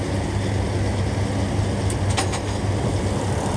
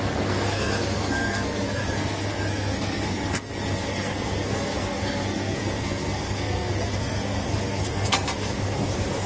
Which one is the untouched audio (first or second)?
first